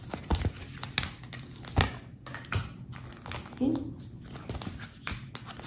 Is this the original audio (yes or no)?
yes